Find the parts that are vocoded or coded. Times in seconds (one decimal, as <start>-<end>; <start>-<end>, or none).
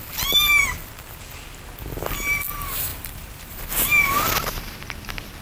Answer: 2.9-3.5